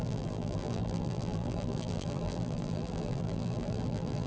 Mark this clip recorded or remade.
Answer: remade